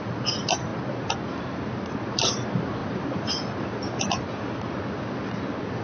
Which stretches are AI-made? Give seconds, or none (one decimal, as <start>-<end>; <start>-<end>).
none